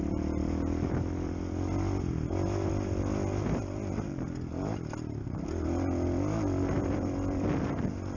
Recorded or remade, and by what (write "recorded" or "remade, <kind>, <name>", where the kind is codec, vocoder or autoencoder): recorded